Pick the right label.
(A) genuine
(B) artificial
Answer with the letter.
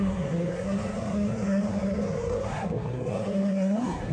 B